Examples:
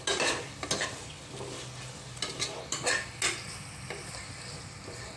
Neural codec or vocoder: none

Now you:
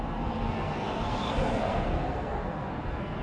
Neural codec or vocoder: codec, SNAC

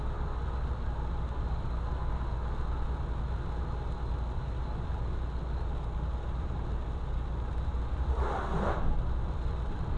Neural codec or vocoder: none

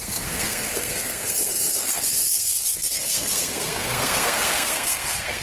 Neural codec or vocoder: codec, SNAC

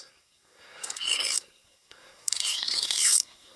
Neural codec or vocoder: codec, SNAC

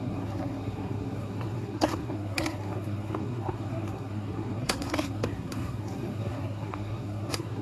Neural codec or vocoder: codec, SNAC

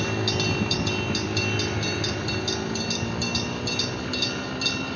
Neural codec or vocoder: none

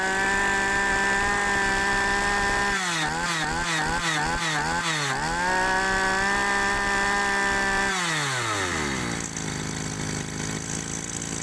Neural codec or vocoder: none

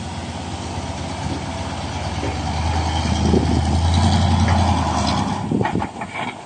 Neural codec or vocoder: none